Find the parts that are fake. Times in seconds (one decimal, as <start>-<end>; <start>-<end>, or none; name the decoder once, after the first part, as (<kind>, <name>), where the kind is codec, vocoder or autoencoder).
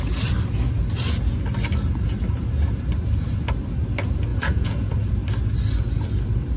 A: 4.3-4.9 (vocoder, Vocos)